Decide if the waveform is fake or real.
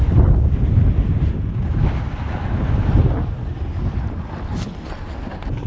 real